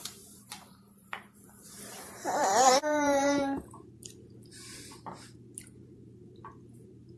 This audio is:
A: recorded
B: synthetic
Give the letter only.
B